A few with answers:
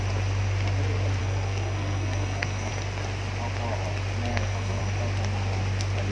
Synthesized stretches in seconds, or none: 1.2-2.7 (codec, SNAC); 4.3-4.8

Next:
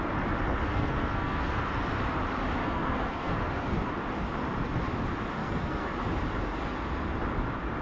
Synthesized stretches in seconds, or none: 0.6-1.6 (codec, SNAC); 2.6-3.9; 5.4-5.9